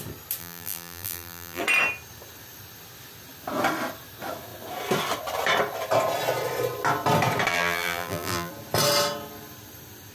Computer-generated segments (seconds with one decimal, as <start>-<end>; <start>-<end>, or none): 0.4-1.6; 7.5-8.5